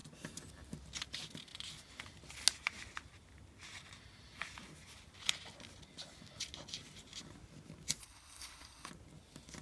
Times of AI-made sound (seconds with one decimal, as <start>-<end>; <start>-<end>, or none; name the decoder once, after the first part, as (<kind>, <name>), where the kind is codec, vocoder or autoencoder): 8.0-8.9 (codec, HILCodec)